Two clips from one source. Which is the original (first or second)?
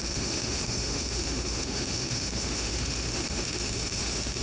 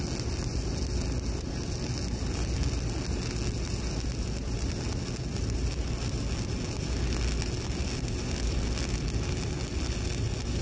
second